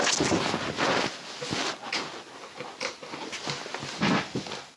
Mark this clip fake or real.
real